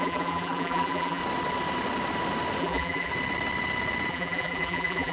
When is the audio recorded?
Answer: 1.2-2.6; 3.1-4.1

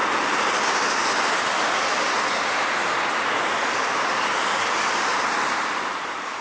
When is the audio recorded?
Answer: 1.0-4.8

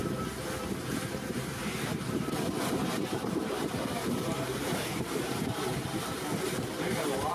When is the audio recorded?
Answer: 0.0-0.8